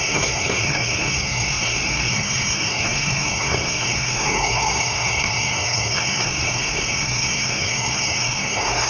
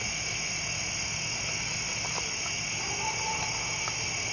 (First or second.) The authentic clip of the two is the second